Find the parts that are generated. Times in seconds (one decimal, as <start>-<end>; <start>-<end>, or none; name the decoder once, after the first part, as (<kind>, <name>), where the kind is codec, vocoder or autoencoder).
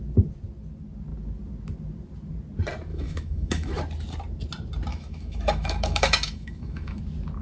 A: 2.9-3.8 (autoencoder, DAC-VAE); 4.9-7.0